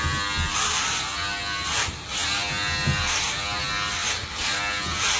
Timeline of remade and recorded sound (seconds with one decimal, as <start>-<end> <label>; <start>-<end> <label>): 0.0-5.2 recorded